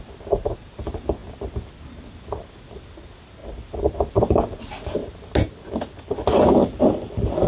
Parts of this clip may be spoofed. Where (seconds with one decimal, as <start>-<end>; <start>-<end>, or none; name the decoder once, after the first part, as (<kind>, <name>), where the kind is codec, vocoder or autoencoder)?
none